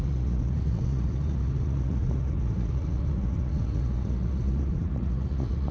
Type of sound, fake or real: fake